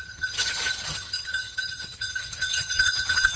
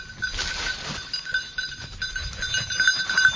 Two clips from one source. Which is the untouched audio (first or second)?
second